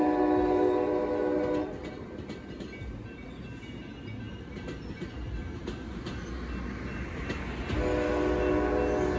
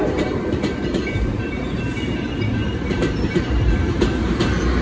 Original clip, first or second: first